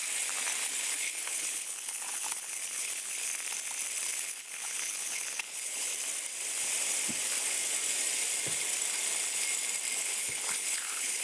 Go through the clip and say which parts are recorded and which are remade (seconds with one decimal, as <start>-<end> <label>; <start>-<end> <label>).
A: 0.0-0.7 recorded; 0.7-3.3 remade; 3.3-4.2 recorded; 4.2-5.9 remade; 5.9-10.0 recorded; 10.0-11.2 remade